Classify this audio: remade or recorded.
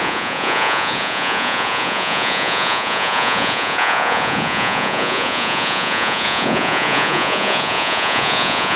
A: remade